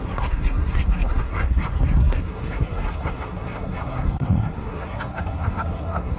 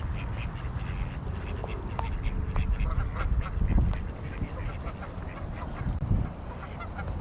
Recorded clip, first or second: second